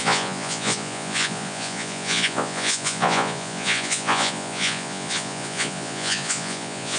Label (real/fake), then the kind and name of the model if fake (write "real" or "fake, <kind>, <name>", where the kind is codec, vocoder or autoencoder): fake, vocoder, Vocos